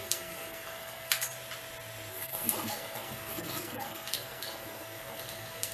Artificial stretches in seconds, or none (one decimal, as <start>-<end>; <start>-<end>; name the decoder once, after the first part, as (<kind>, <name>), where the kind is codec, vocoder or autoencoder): 0.0-1.3 (codec, SNAC); 2.1-5.7